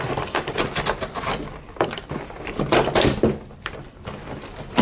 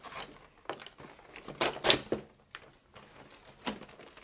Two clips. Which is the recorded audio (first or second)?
second